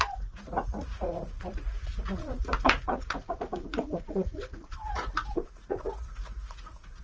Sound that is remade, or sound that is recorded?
remade